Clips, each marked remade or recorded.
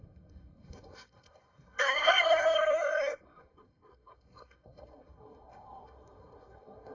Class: remade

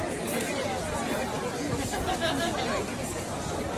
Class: recorded